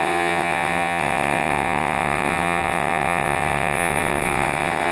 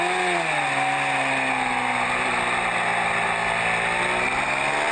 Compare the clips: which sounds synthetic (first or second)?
first